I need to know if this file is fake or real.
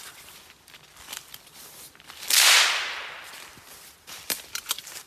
fake